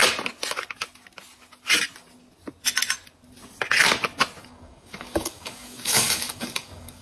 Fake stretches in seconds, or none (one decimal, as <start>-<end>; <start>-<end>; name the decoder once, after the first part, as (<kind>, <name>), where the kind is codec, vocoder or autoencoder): 4.4-7.0 (codec, DAC)